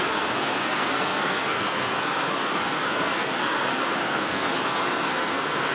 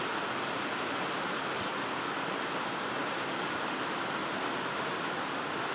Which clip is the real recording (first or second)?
second